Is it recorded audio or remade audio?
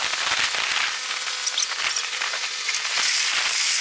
recorded